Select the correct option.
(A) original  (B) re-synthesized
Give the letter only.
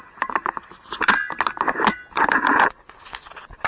A